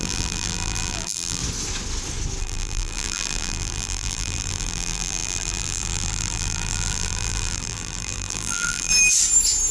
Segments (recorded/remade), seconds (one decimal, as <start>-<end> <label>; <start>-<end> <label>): 0.0-1.4 remade; 1.4-2.4 recorded; 2.4-8.9 remade; 8.9-9.7 recorded